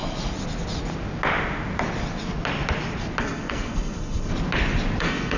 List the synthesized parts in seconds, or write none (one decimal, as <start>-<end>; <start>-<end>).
3.2-4.3; 5.0-5.4

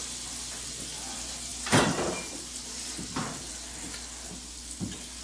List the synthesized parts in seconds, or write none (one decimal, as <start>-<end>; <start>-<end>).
none

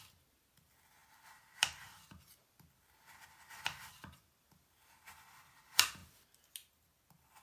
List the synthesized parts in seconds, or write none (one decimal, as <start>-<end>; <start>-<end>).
none